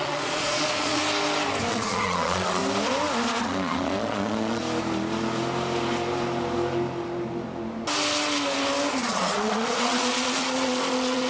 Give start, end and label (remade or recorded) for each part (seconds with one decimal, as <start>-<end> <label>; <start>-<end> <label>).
0.0-1.0 remade; 1.0-1.7 recorded; 1.7-2.6 remade; 2.6-3.4 recorded; 3.4-4.6 remade; 4.6-8.9 recorded; 8.9-11.3 remade